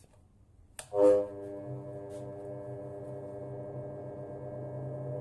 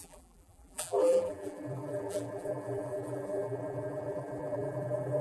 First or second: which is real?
first